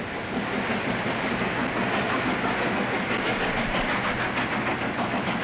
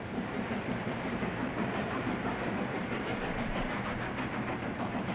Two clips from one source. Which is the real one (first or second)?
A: first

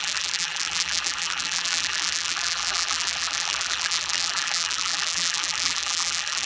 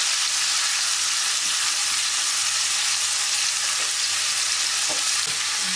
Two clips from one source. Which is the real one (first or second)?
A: second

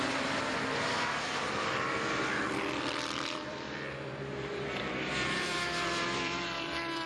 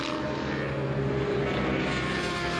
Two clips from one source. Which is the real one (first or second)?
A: second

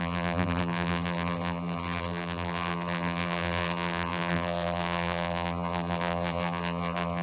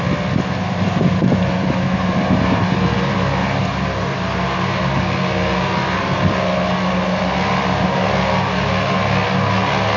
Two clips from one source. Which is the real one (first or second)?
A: second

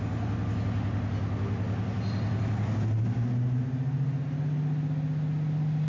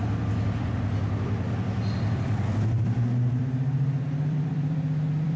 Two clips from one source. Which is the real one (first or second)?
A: first